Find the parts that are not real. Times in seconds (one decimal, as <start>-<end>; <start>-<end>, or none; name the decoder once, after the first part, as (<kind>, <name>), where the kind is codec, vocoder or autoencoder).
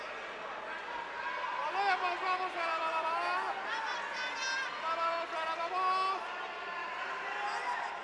none